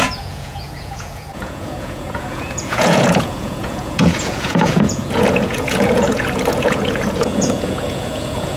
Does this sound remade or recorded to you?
remade